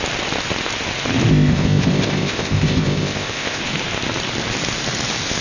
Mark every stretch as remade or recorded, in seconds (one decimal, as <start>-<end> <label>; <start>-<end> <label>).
0.0-1.3 recorded; 1.3-3.6 remade; 3.6-5.4 recorded